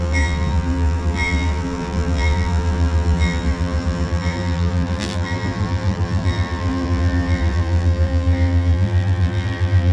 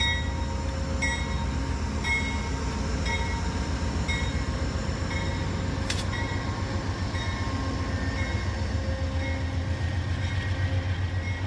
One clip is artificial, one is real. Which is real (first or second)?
second